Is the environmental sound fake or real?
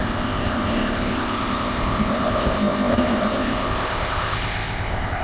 fake